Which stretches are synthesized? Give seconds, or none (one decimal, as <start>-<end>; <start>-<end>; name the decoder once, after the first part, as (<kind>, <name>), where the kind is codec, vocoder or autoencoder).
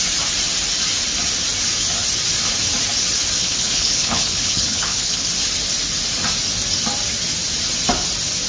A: 3.4-5.3 (codec, HILCodec)